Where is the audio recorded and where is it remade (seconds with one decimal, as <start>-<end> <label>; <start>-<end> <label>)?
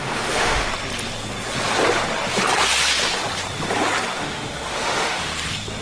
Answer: 0.0-0.7 remade; 0.7-4.2 recorded; 4.2-5.3 remade; 5.3-5.8 recorded